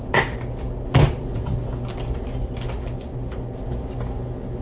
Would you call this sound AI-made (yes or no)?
no